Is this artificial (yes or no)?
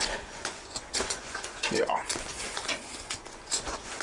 yes